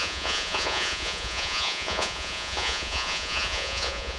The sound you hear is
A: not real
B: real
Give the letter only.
A